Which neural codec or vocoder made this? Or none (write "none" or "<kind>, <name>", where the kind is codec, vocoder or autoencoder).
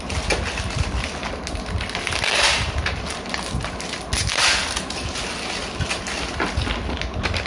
none